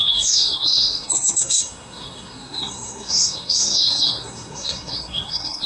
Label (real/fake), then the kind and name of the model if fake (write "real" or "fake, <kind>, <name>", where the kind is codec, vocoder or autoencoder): fake, codec, SNAC